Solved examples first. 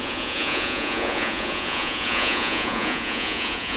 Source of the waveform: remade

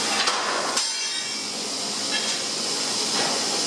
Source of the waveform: remade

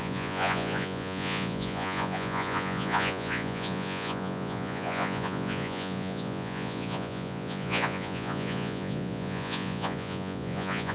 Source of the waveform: remade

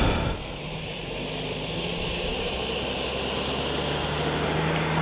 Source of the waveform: recorded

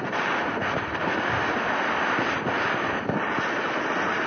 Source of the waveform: recorded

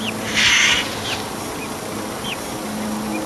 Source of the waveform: recorded